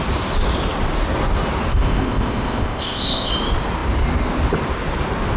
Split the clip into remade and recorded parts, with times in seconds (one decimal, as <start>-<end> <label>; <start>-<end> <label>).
0.0-1.7 recorded; 1.7-3.3 remade; 3.3-5.4 recorded